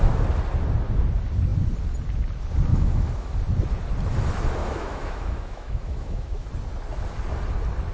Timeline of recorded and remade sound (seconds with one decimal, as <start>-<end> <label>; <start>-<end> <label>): 0.0-2.7 recorded; 2.7-3.3 remade; 3.3-4.6 recorded; 4.6-6.5 remade; 6.5-7.9 recorded